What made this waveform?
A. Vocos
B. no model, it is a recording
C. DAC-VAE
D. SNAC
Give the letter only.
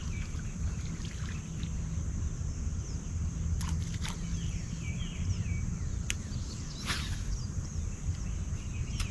B